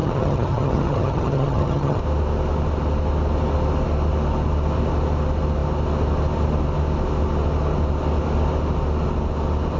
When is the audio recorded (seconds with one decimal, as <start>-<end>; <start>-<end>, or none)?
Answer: 2.0-9.8